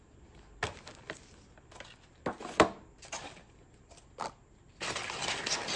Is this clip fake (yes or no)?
no